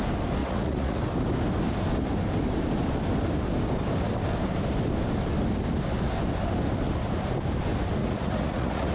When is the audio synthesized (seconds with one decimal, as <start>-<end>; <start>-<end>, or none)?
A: 0.4-1.0; 8.0-8.9